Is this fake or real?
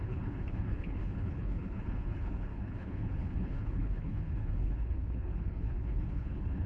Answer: fake